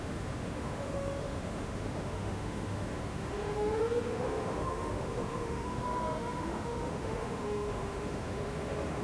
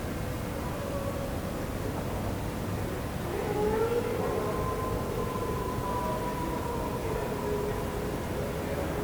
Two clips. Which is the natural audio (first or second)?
second